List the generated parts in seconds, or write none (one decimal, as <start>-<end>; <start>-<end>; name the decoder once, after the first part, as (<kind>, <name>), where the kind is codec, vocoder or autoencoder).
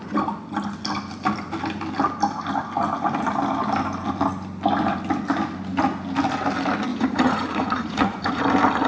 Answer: 6.9-8.4 (vocoder, Vocos)